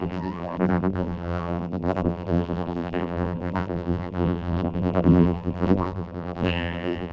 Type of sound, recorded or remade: remade